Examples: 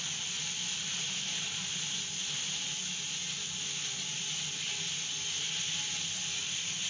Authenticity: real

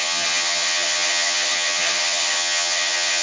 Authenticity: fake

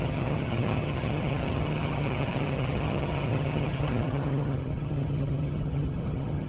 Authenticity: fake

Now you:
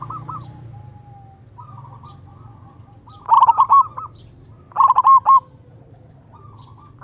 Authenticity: real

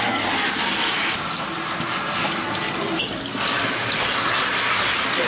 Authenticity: real